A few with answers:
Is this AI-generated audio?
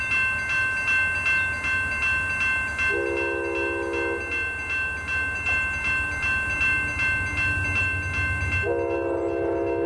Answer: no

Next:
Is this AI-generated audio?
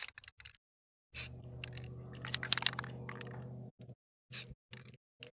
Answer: no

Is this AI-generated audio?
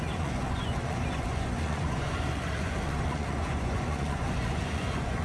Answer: yes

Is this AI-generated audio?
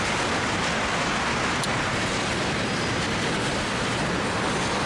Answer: no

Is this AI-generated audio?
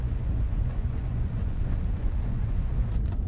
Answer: yes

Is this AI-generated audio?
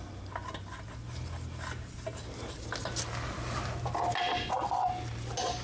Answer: no